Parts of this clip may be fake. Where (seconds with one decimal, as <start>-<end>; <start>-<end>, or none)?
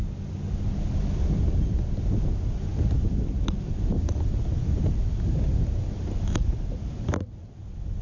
none